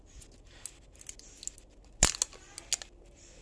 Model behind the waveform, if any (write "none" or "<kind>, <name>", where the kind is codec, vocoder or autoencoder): none